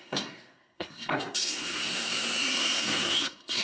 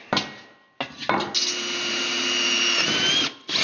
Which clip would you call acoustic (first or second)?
second